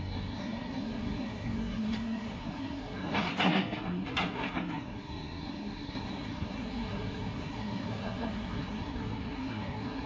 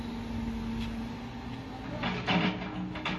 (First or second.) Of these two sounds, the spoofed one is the first